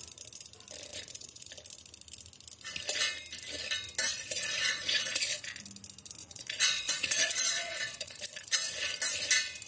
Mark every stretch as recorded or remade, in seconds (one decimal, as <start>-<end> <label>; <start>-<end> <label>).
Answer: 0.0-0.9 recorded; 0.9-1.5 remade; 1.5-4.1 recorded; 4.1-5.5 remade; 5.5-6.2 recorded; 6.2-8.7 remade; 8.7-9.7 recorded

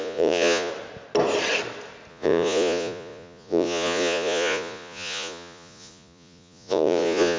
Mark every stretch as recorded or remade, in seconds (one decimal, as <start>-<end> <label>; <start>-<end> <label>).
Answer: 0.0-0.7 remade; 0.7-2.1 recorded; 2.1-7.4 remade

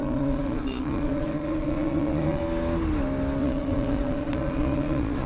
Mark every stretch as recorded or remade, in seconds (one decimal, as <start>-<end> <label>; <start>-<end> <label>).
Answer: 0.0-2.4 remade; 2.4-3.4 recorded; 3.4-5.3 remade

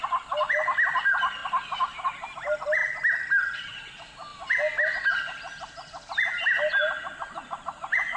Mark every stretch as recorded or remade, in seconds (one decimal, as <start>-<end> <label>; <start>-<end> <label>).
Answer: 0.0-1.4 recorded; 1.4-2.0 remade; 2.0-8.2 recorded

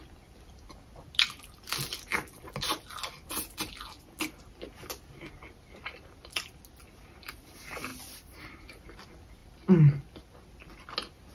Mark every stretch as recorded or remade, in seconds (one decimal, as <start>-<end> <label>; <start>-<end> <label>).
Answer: 0.0-11.3 recorded